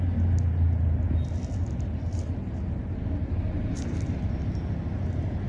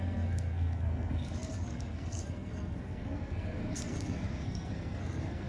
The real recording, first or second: first